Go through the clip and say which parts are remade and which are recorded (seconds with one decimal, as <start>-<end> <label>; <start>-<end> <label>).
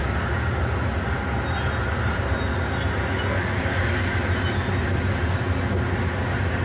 0.0-6.6 recorded